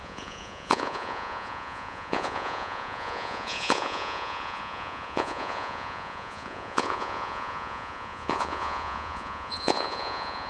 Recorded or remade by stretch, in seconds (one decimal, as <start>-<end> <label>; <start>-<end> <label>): 0.0-10.5 remade